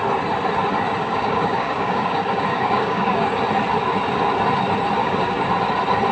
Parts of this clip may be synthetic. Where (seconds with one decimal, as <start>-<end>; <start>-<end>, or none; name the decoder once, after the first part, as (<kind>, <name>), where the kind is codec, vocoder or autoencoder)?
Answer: 1.0-3.4 (codec, DAC); 5.0-5.5